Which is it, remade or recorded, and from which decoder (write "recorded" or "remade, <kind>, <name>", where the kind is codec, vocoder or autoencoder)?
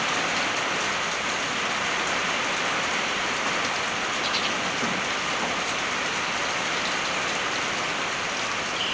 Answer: remade, vocoder, BigVGAN v2